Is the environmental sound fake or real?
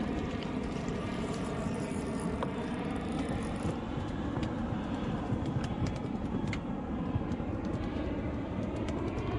fake